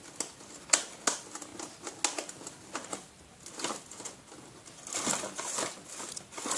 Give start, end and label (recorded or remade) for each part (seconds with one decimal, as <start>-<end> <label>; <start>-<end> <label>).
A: 0.0-6.6 recorded